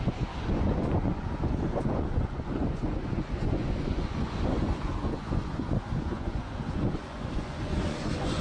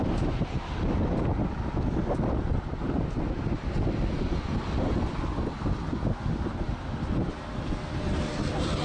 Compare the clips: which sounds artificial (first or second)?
first